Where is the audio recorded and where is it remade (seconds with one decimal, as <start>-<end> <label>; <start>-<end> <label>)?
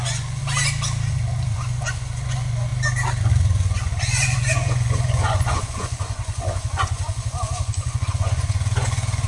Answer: 0.0-0.4 remade; 0.4-1.1 recorded; 1.1-2.7 remade; 2.7-3.3 recorded; 3.3-9.3 remade